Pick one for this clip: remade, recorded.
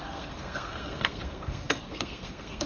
remade